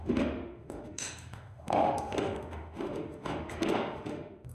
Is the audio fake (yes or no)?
yes